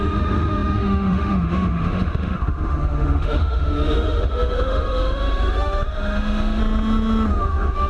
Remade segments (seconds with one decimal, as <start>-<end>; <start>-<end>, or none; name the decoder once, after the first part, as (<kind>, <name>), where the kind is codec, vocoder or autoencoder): 0.0-6.6 (autoencoder, DAC-VAE); 7.3-7.9